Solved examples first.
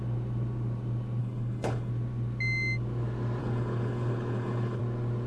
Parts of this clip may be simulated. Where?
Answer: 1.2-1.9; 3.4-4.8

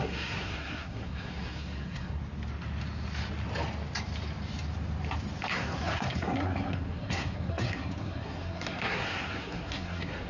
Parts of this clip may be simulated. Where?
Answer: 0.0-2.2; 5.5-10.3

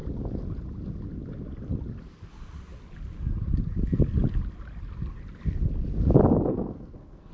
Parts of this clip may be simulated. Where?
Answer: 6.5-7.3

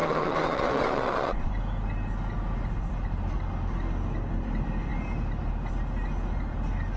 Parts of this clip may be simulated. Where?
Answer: 0.0-1.5

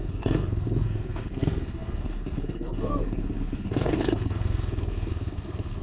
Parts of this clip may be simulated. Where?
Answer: 0.0-5.8

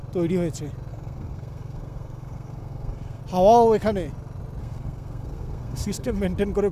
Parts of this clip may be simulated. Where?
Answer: 0.9-3.2; 4.6-6.2

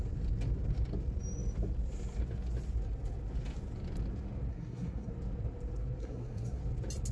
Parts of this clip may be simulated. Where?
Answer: 4.5-5.1; 6.0-6.6

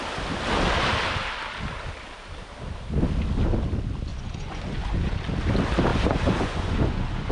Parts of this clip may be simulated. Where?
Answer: 4.1-5.1; 5.9-7.3